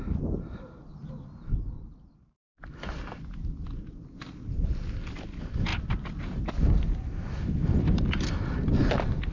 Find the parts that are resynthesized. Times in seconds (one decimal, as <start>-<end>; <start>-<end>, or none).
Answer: none